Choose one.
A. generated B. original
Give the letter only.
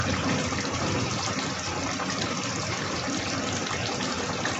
A